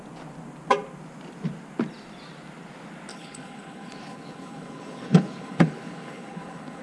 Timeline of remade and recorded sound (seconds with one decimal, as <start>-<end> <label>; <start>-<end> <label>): 0.0-3.1 recorded; 3.1-6.8 remade

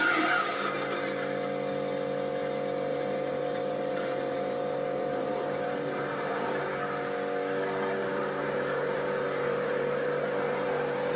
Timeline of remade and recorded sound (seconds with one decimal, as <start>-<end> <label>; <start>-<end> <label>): 0.0-2.9 recorded; 2.9-6.6 remade; 6.6-8.0 recorded; 8.0-11.2 remade